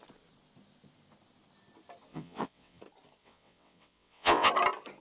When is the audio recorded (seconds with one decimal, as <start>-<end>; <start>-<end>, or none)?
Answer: 0.0-2.1; 2.8-3.2; 4.5-5.0